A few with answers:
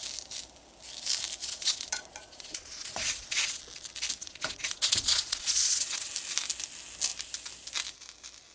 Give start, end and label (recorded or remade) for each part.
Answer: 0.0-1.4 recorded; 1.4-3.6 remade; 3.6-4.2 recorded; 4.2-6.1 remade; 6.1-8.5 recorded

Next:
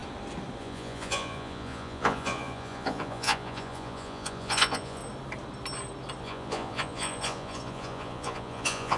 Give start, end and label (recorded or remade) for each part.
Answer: 0.0-0.6 recorded; 0.6-5.0 remade; 5.0-6.2 recorded; 6.2-9.0 remade

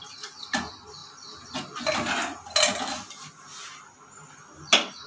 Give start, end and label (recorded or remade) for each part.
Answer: 0.0-5.1 recorded

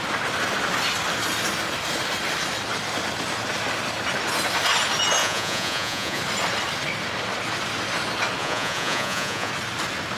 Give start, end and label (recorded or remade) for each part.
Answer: 0.0-5.2 recorded; 5.2-6.2 remade; 6.2-8.4 recorded; 8.4-9.5 remade; 9.5-10.2 recorded

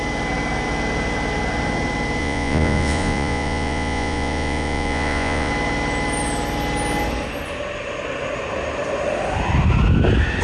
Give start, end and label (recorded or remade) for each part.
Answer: 0.0-2.2 recorded; 2.2-5.5 remade; 5.5-10.4 recorded

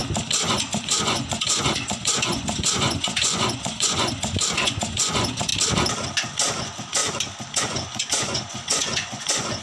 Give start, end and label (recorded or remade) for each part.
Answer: 0.0-0.5 recorded; 0.5-5.5 remade; 5.5-6.6 recorded; 6.6-7.0 remade; 7.0-7.6 recorded; 7.6-9.6 remade

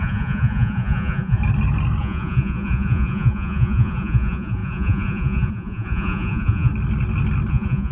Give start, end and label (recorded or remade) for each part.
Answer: 0.0-1.4 remade; 1.4-2.0 recorded; 2.0-6.7 remade; 6.7-7.5 recorded; 7.5-7.9 remade